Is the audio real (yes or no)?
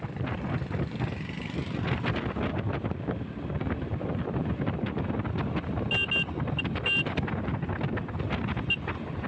yes